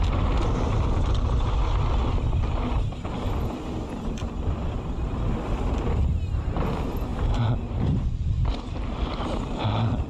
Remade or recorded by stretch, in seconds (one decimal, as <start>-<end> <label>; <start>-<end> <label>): 0.0-10.1 recorded